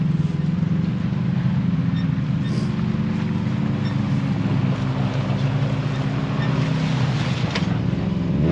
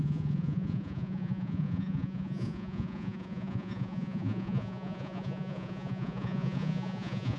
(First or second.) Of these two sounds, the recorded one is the first